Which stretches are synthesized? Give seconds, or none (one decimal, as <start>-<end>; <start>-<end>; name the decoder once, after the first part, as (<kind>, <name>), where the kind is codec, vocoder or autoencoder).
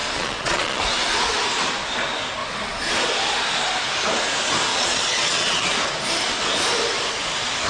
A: 0.0-0.8 (vocoder, Vocos); 4.7-5.7